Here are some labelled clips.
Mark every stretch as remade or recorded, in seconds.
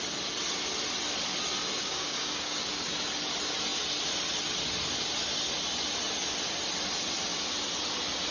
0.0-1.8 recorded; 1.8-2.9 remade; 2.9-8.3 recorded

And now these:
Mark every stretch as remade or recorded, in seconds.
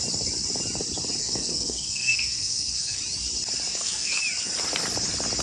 0.0-1.2 recorded; 1.2-3.0 remade; 3.0-3.7 recorded; 3.7-4.2 remade; 4.2-5.4 recorded